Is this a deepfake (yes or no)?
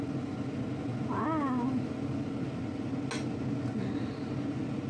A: no